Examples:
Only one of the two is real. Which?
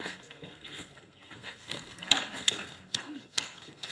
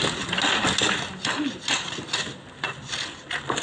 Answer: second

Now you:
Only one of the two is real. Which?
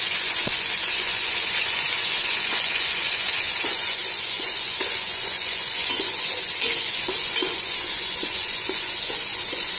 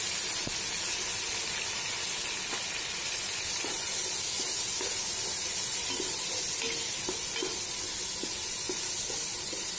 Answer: second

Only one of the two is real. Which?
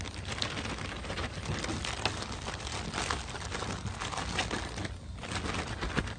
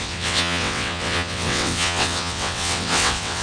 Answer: first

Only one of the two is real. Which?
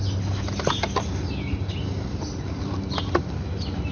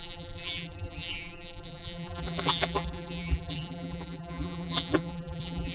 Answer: first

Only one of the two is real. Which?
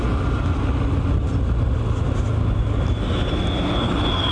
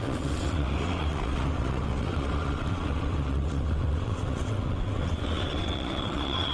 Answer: first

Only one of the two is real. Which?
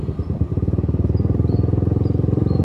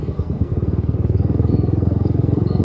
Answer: first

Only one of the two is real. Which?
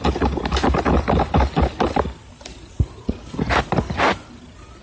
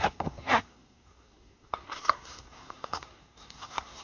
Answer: first